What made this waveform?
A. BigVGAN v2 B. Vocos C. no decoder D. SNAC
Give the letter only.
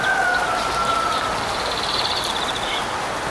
C